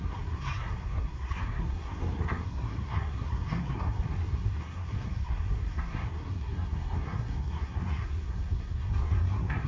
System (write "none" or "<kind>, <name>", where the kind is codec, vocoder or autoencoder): codec, SNAC